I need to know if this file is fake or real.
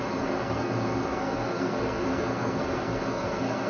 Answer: fake